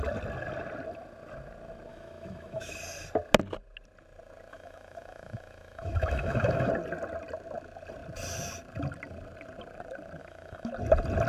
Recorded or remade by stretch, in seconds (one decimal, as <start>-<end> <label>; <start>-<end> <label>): 0.0-1.9 recorded; 1.9-2.7 remade; 2.7-4.5 recorded; 4.5-6.7 remade; 6.7-10.2 recorded; 10.2-10.7 remade; 10.7-11.3 recorded